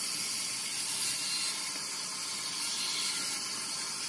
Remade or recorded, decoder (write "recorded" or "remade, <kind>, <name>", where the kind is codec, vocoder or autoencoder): recorded